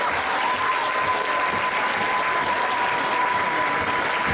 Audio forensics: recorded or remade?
recorded